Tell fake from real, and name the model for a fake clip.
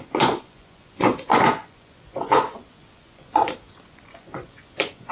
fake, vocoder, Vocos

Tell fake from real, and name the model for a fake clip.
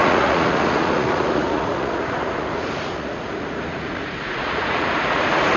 fake, vocoder, Vocos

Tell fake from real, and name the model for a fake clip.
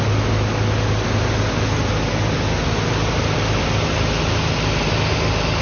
real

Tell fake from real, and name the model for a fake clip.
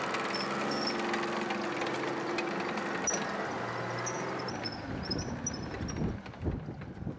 real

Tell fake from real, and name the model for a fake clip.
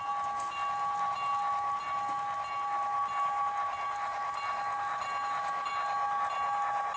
real